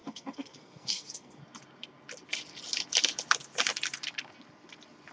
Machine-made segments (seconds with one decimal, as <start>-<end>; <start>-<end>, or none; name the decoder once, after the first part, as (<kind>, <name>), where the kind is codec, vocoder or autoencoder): 0.0-1.4 (codec, SNAC)